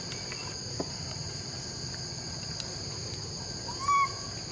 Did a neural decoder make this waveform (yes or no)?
no